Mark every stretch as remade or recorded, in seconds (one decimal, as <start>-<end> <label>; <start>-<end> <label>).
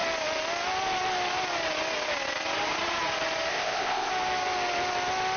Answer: 0.0-3.5 recorded; 3.5-4.1 remade; 4.1-5.4 recorded